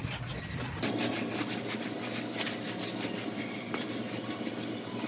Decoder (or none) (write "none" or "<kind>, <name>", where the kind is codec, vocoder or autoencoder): none